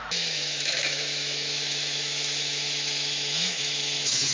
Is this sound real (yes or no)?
no